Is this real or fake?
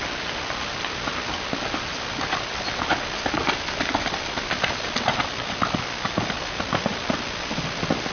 real